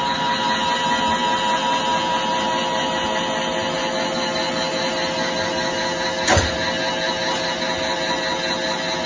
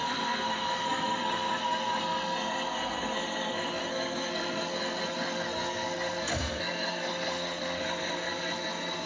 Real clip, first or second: first